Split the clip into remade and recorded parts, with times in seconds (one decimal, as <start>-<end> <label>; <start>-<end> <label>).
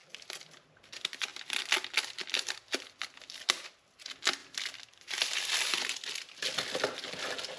0.0-0.5 remade; 0.5-4.4 recorded; 4.4-7.6 remade